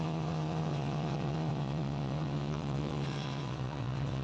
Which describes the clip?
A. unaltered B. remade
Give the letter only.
B